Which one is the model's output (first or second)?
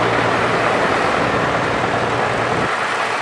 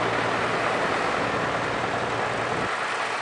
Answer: first